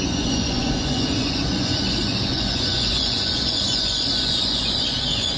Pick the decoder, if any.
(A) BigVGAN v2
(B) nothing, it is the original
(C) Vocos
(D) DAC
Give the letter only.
C